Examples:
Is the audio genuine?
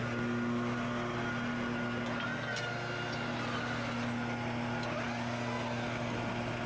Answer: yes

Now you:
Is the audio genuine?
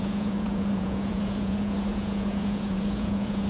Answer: no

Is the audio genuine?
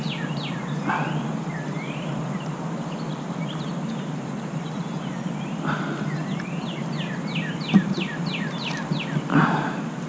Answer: yes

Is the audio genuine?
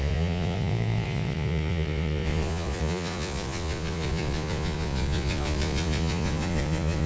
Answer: no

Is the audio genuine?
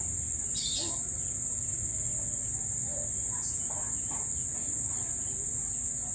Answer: yes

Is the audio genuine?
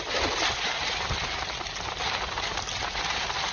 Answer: yes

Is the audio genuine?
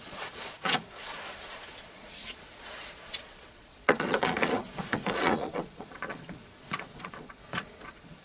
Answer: no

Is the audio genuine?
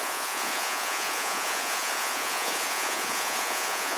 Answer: no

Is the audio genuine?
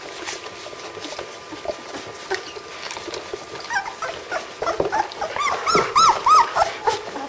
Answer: yes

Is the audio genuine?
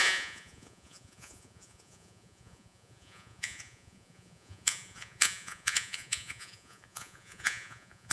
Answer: no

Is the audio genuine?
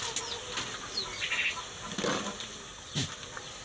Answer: yes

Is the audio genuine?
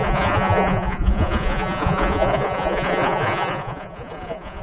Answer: no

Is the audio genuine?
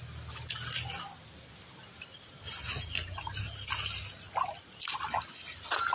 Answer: yes